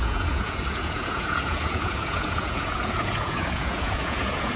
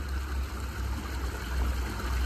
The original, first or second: second